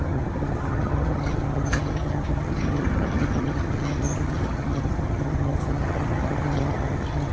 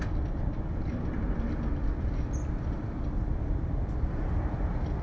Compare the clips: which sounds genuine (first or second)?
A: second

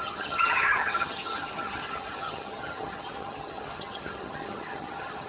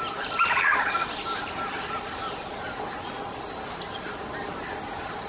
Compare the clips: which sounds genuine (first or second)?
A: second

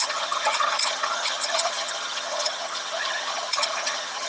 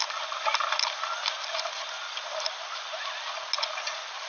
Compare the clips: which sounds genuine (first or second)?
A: second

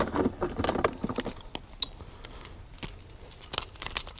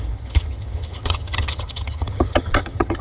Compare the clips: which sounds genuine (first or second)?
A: first